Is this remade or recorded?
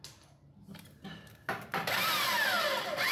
recorded